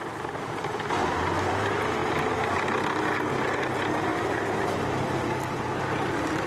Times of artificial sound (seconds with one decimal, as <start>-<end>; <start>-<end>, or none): 1.0-1.5; 4.1-6.5